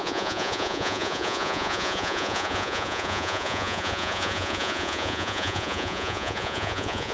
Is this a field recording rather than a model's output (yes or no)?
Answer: no